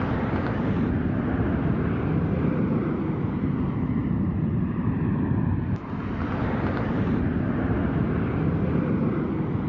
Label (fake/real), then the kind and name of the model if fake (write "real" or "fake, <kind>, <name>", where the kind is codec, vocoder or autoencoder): real